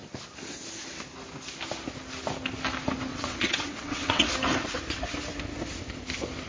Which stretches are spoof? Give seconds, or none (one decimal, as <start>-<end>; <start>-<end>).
3.1-4.3